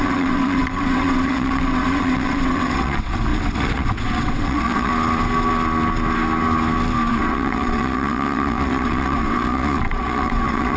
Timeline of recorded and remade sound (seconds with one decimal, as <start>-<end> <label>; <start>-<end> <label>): 0.0-4.9 remade; 4.9-7.1 recorded; 7.1-10.8 remade